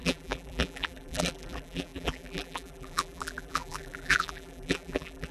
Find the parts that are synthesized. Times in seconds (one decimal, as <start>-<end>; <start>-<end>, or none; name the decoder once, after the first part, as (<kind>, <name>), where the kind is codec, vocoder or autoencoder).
0.0-5.3 (vocoder, BigVGAN v2)